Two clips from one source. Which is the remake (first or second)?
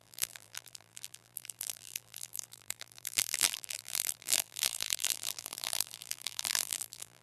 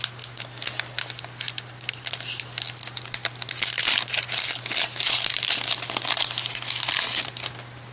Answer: first